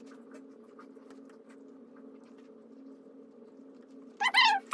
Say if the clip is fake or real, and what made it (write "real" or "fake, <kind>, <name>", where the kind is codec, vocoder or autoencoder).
real